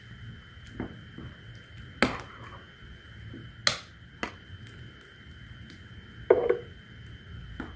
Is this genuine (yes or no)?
yes